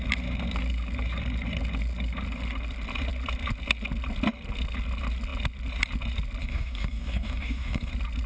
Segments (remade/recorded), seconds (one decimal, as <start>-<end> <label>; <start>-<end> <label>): 0.0-6.4 recorded; 6.4-7.9 remade; 7.9-8.3 recorded